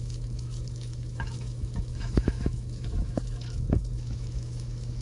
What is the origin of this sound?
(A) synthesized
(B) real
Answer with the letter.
A